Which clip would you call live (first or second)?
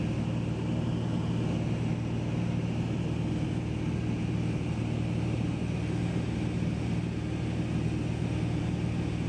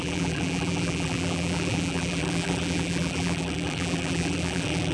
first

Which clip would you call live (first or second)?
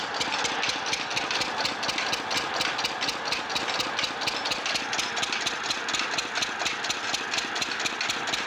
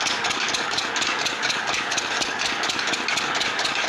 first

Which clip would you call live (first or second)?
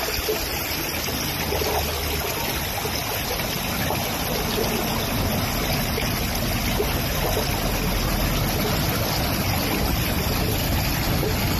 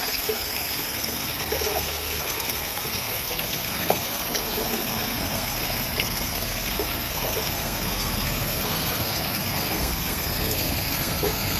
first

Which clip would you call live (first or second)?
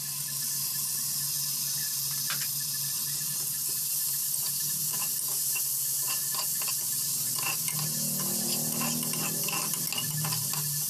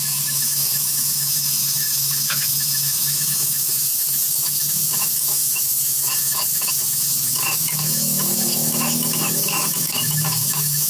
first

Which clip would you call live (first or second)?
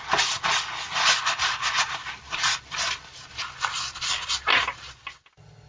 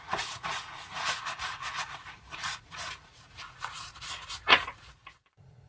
first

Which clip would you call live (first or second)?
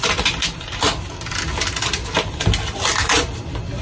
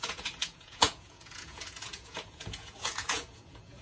first